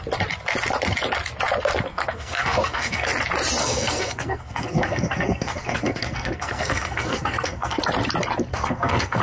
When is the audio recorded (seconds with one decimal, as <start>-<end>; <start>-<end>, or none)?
0.0-1.9; 3.1-3.6; 7.8-8.5